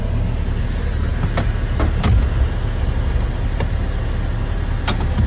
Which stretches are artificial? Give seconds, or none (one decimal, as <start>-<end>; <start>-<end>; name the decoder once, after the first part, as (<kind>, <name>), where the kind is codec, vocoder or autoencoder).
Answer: none

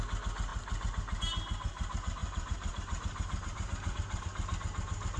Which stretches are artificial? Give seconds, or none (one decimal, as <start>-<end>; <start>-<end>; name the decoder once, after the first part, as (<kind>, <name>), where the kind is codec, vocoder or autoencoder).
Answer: 2.2-4.3 (vocoder, BigVGAN v2)

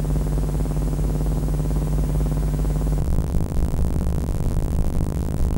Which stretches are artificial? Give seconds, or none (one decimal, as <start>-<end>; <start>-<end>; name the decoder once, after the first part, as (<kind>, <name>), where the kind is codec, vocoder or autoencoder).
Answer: 3.0-5.6 (vocoder, BigVGAN v2)